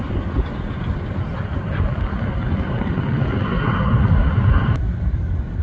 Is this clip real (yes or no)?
yes